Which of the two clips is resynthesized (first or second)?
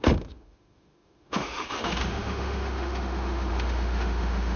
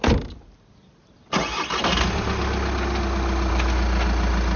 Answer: first